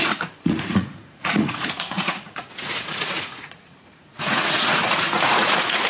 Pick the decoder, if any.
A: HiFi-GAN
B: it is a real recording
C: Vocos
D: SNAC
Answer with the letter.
C